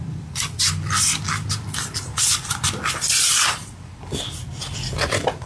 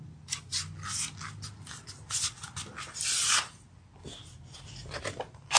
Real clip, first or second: second